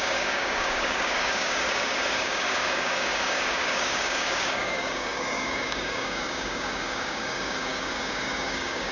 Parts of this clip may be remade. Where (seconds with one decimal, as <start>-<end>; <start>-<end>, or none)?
0.0-8.9